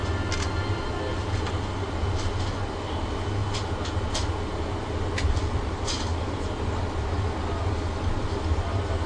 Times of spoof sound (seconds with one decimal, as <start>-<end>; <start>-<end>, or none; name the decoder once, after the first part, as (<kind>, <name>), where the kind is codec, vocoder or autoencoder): none